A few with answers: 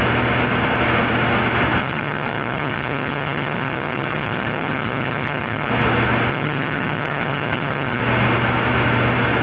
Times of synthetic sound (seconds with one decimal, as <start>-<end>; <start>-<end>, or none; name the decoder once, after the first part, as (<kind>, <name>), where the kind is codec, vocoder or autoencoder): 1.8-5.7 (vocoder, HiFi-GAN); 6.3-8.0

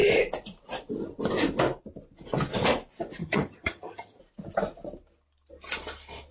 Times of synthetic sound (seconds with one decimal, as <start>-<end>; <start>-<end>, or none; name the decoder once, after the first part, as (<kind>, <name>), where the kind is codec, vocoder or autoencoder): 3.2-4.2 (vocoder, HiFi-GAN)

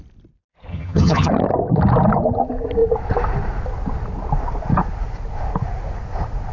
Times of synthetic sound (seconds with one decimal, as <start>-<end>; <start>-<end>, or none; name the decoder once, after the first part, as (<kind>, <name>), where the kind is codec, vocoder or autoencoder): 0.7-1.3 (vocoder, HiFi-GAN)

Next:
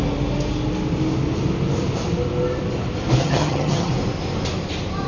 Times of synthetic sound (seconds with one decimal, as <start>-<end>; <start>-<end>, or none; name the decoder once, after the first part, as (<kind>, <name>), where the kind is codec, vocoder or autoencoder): 3.2-3.9 (vocoder, HiFi-GAN)

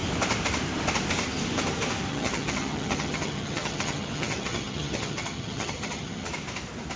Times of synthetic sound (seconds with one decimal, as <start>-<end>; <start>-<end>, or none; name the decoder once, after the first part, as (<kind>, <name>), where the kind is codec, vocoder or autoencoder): 2.1-6.3 (vocoder, HiFi-GAN)

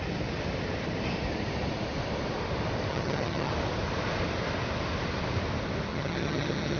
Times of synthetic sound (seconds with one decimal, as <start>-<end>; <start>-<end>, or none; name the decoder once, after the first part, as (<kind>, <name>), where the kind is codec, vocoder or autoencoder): 2.9-3.5 (vocoder, HiFi-GAN); 5.9-6.8

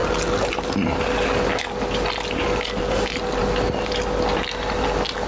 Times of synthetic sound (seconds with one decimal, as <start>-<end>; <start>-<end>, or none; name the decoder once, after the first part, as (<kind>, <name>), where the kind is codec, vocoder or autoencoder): none